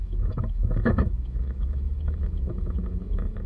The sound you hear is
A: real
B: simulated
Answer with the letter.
B